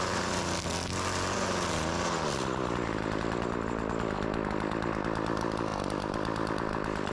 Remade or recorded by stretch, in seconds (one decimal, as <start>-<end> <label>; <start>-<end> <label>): 0.0-5.7 recorded; 5.7-7.1 remade